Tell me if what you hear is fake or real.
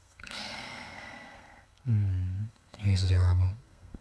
fake